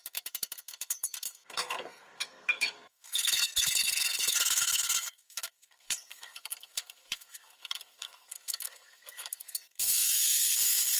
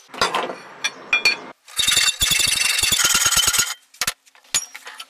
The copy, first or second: first